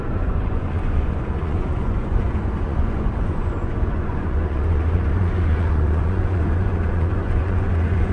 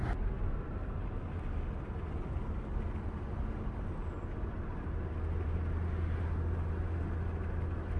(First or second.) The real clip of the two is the second